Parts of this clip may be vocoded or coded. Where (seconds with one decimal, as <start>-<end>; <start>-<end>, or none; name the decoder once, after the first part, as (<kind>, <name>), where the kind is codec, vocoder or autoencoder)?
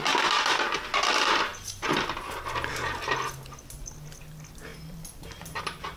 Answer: 4.7-5.6 (vocoder, BigVGAN v2)